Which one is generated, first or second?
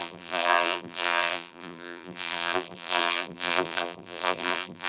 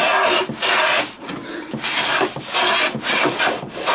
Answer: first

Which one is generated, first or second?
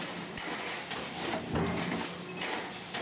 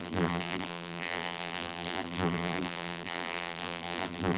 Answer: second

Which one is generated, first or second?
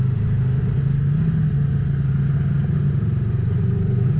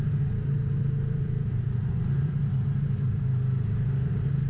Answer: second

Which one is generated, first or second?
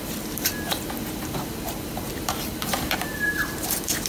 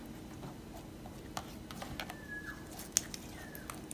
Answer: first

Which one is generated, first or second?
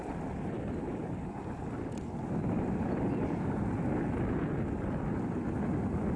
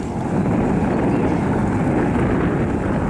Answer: first